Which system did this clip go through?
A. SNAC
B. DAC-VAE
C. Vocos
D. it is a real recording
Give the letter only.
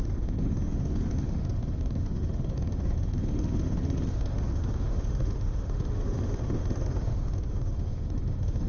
B